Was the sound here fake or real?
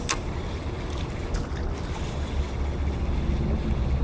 real